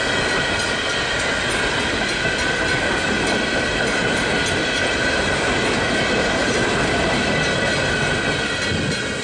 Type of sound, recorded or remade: recorded